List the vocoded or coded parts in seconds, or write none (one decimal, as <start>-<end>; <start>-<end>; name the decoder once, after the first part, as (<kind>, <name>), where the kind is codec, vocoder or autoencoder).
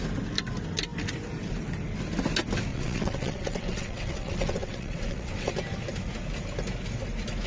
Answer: 2.7-5.5 (vocoder, WaveNeXt)